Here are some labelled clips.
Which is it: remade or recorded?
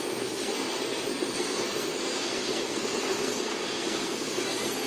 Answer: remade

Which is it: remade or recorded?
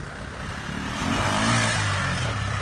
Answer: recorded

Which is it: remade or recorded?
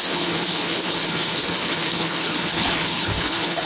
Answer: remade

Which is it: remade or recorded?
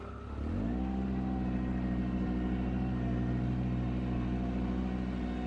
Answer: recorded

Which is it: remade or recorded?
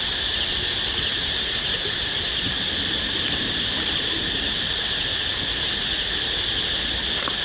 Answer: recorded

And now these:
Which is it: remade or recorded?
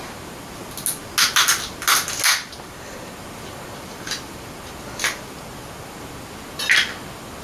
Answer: recorded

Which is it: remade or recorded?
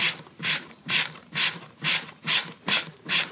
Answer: remade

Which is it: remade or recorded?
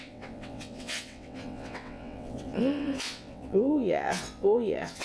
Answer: remade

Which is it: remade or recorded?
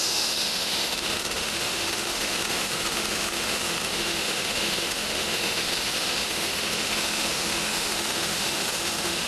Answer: remade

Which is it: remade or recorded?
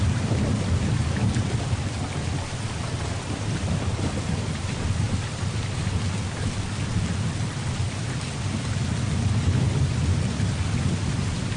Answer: recorded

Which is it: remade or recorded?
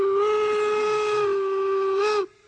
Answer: recorded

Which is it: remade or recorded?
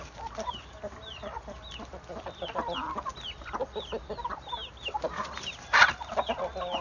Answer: recorded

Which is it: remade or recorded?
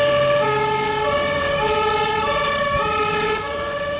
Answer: remade